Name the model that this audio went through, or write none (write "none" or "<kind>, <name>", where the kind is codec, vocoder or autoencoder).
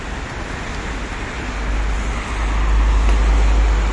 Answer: none